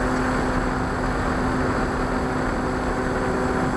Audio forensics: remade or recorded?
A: recorded